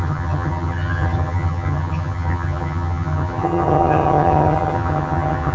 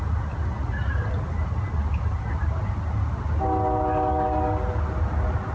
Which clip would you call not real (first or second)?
first